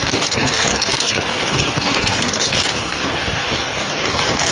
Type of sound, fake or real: fake